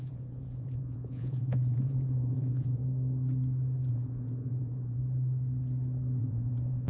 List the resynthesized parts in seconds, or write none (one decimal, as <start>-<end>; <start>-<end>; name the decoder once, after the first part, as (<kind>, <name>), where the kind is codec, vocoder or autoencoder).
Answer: 0.0-2.8 (vocoder, Vocos); 3.9-5.0; 6.2-6.9